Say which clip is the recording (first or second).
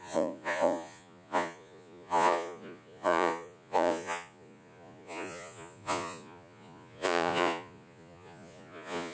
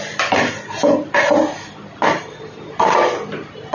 second